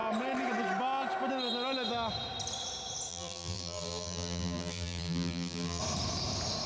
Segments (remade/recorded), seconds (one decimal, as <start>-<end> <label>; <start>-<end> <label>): 0.0-3.1 recorded; 3.1-5.8 remade; 5.8-6.7 recorded